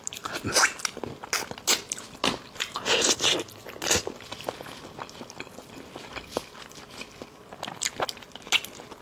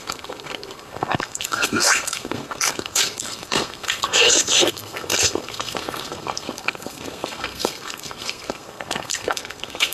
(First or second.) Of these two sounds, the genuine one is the first